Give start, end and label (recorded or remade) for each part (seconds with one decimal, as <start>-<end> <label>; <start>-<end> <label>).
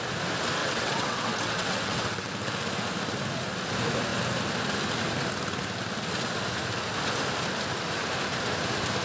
0.0-0.6 recorded; 0.6-2.3 remade; 2.3-9.0 recorded